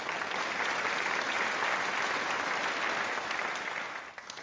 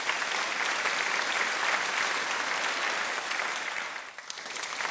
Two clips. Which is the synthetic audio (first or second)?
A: second